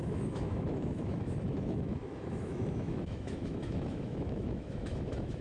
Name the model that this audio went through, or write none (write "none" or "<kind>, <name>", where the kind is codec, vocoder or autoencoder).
autoencoder, DAC-VAE